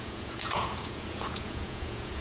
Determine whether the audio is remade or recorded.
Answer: remade